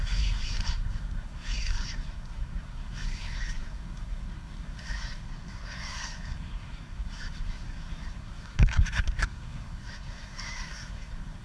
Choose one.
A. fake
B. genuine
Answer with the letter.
A